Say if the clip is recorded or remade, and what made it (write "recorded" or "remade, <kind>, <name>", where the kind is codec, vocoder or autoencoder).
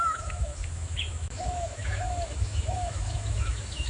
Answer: remade, autoencoder, DAC-VAE